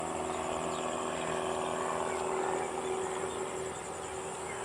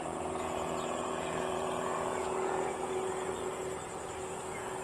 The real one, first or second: first